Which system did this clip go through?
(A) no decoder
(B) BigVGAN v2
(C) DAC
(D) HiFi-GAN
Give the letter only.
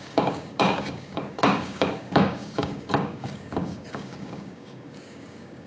C